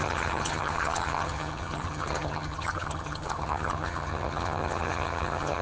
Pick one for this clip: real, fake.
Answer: fake